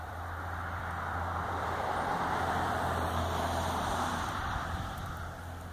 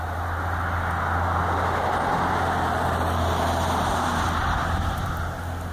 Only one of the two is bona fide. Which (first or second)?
second